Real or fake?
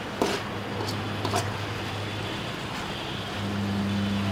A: real